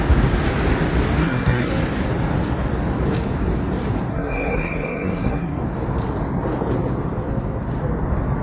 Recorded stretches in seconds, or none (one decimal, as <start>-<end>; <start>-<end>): 0.0-1.2; 1.7-4.1; 5.6-8.4